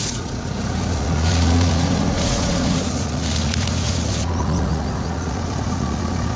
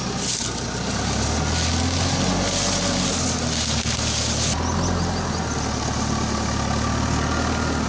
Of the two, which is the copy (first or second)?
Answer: first